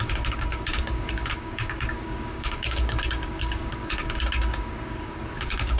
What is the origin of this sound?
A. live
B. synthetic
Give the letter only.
B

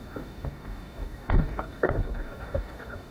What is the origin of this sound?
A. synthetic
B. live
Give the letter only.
A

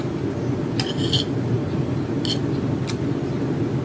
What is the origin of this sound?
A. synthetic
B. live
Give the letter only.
B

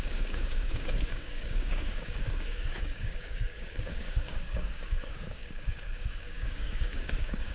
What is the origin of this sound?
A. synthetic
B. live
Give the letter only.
A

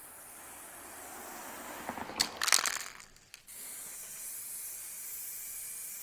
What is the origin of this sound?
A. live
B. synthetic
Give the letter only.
A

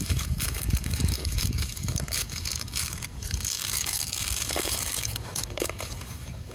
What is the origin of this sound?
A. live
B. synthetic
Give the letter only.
B